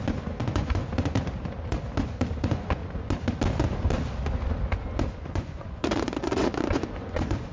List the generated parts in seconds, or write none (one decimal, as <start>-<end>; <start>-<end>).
0.0-0.8; 2.4-2.8; 5.1-7.5